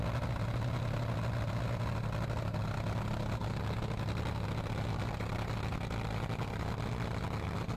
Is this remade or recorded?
recorded